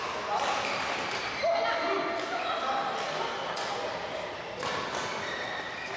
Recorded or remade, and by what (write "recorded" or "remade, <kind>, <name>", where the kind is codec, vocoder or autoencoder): recorded